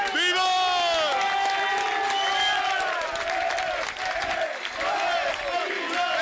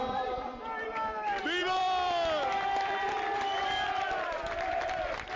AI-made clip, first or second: second